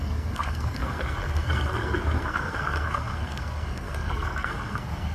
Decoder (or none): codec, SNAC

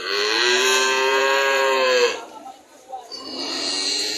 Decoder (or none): vocoder, BigVGAN v2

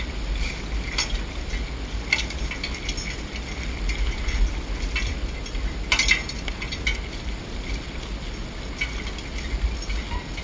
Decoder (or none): none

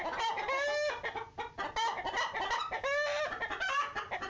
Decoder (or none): none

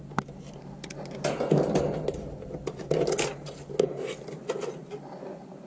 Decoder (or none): none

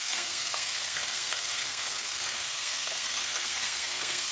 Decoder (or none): codec, SNAC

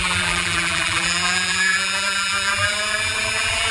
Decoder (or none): vocoder, BigVGAN v2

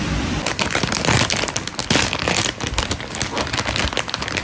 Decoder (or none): none